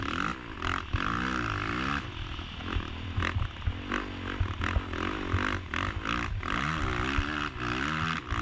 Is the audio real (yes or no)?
yes